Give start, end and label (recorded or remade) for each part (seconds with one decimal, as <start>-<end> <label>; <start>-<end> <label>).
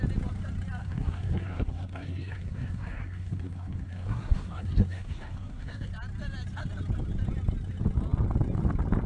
0.0-0.8 recorded; 0.8-5.9 remade; 5.9-9.1 recorded